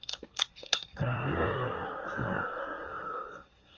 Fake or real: fake